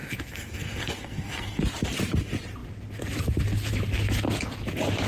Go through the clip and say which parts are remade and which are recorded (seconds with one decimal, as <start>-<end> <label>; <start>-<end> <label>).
0.0-1.6 remade; 1.6-5.1 recorded